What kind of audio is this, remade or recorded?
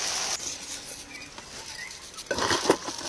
recorded